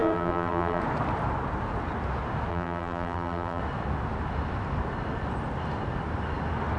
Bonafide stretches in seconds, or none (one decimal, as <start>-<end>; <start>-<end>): 0.8-2.5; 3.6-6.8